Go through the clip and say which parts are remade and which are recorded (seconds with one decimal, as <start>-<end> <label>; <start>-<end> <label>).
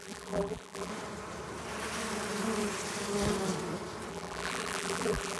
0.0-0.9 remade; 0.9-4.1 recorded; 4.1-5.4 remade